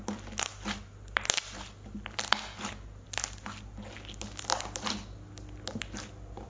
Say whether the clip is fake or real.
real